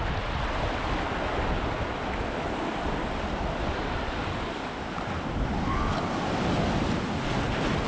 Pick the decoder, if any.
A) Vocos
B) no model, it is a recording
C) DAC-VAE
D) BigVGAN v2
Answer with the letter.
B